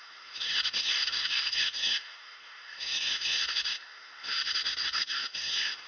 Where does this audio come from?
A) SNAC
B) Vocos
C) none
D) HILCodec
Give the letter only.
A